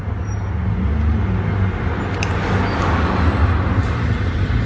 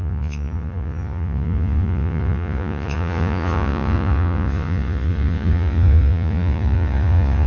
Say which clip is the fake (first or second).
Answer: second